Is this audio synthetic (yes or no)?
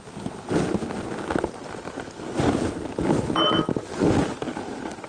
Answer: no